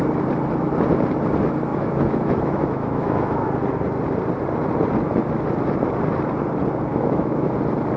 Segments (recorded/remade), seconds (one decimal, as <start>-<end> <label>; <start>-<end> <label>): 0.0-1.7 recorded; 1.7-3.5 remade; 3.5-6.9 recorded; 6.9-7.5 remade; 7.5-8.0 recorded